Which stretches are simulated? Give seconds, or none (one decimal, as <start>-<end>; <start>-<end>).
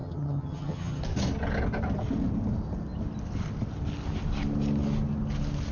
0.0-1.0